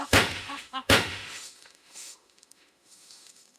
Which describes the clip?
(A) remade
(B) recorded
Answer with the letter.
A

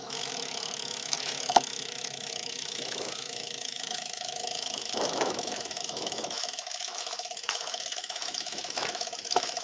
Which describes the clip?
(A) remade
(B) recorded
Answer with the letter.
A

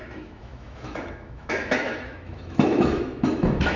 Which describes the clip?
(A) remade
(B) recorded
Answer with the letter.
A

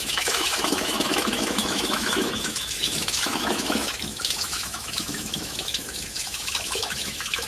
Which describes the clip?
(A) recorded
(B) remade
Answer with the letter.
B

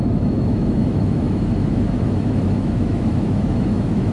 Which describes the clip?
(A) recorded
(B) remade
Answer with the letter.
B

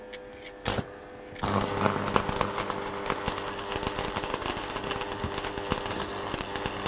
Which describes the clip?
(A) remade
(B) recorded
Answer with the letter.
B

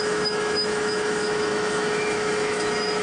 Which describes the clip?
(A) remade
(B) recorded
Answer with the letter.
A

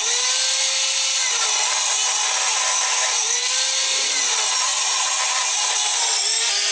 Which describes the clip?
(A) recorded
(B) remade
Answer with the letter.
A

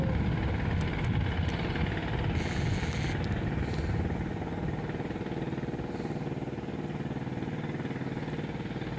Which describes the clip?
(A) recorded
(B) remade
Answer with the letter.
A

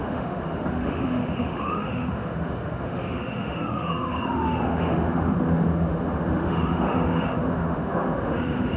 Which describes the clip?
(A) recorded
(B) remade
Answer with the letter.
B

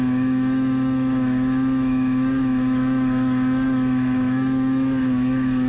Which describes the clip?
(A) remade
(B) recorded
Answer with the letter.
A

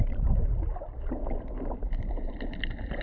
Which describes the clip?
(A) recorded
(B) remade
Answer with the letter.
A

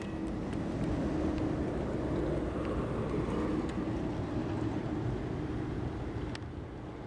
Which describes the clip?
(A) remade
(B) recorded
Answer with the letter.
B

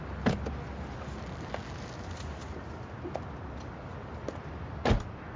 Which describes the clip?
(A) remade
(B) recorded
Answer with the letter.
B